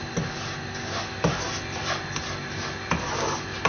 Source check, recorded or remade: recorded